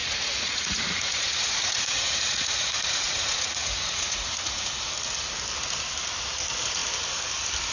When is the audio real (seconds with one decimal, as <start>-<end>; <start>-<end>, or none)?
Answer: 4.6-7.7